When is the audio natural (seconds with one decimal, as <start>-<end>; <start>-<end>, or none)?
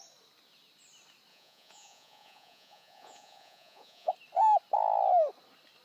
0.0-1.3; 4.1-5.8